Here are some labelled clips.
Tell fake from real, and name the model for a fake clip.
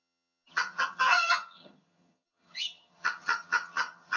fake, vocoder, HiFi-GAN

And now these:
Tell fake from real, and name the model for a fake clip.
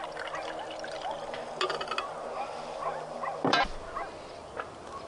real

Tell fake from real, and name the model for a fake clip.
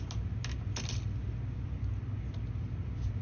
real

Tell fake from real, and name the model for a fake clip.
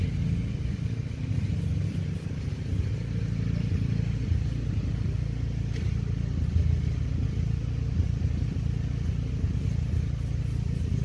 real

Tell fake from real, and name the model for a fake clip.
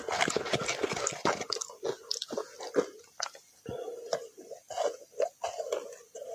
real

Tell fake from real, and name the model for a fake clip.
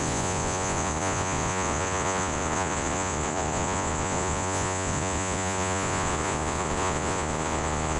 fake, vocoder, Vocos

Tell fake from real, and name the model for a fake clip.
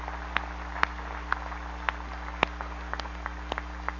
real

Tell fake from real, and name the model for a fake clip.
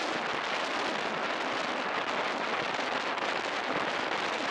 real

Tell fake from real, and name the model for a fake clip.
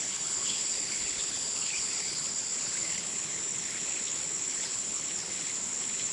fake, codec, HILCodec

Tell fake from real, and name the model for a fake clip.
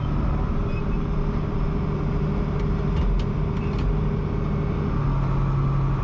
real